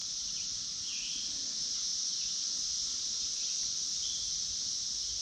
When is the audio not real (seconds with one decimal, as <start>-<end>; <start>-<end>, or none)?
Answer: 0.0-0.5